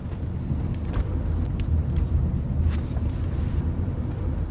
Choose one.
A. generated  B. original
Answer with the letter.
B